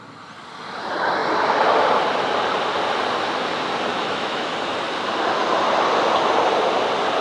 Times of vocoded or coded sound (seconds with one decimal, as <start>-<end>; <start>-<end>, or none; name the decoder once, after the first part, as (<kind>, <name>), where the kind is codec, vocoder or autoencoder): 3.9-4.5 (autoencoder, DAC-VAE)